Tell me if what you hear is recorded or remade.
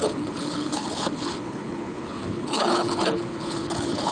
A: remade